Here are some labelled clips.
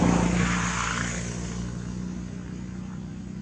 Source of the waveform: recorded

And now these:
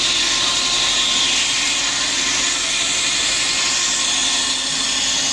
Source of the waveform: recorded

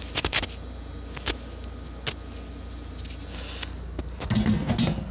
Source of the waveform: recorded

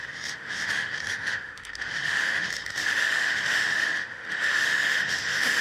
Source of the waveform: remade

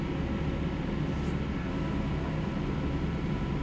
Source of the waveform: recorded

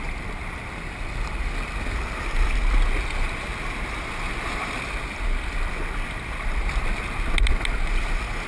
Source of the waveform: recorded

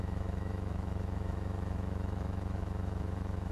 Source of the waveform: remade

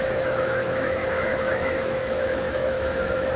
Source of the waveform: remade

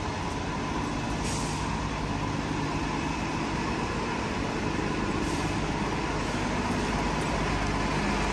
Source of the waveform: recorded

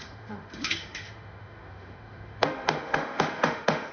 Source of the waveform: remade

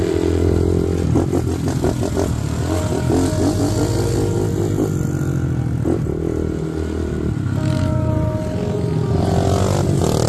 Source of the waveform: recorded